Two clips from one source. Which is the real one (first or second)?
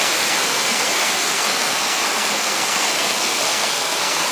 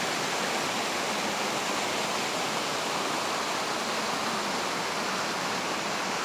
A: second